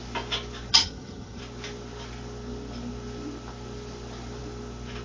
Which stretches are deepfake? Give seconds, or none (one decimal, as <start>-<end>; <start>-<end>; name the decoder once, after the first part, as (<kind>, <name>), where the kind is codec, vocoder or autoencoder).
0.7-1.4 (vocoder, HiFi-GAN)